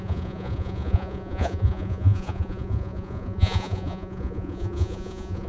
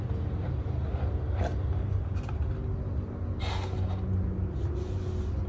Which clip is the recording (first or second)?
second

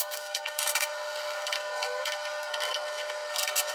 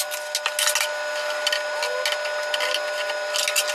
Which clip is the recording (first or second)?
second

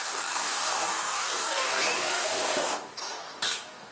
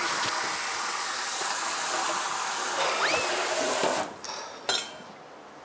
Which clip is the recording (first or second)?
second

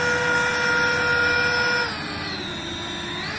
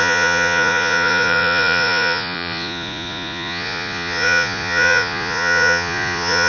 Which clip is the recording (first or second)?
first